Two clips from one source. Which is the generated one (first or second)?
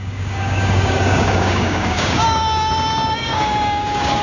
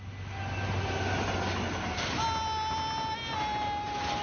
first